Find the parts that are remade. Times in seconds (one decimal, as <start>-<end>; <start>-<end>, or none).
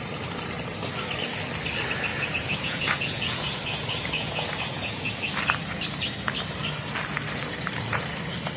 2.1-5.1